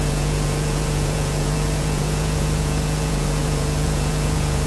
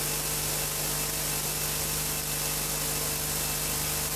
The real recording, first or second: second